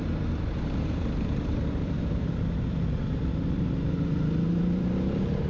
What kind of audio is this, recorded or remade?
remade